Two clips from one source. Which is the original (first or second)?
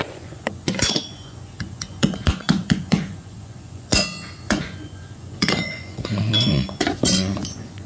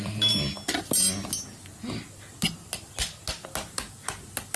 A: second